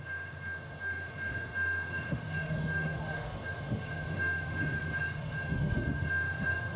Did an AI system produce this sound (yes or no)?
yes